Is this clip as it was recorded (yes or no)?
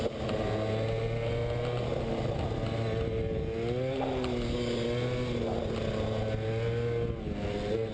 yes